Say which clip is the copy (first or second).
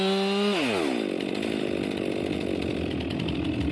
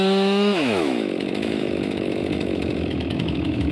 second